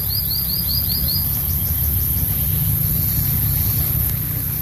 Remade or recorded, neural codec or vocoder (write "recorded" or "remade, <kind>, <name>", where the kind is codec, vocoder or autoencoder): recorded